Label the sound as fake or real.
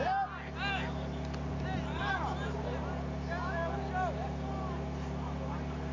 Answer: real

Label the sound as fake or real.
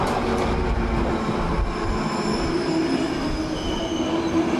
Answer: real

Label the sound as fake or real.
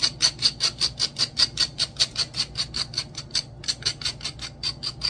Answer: real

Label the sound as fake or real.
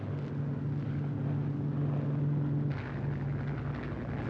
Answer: real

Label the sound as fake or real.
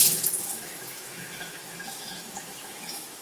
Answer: fake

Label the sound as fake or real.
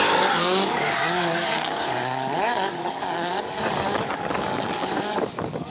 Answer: fake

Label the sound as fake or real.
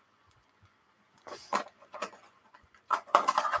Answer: fake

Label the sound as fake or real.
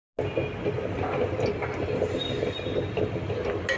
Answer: real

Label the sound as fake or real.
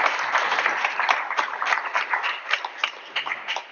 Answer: fake